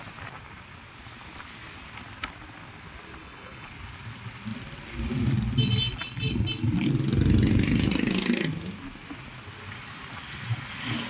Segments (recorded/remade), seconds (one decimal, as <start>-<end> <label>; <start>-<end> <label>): 0.0-3.2 recorded; 3.2-3.7 remade; 3.7-11.1 recorded